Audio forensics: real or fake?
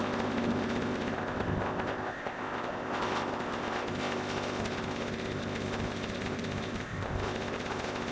fake